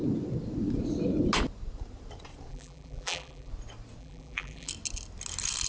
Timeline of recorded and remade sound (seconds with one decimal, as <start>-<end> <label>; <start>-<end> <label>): 0.0-2.5 recorded; 2.5-3.5 remade; 3.5-4.0 recorded; 4.0-4.7 remade; 4.7-5.7 recorded